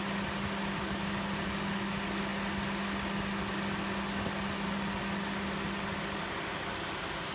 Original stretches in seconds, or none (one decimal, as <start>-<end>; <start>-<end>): 0.0-7.3